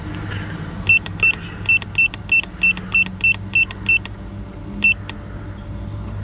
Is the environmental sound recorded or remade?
recorded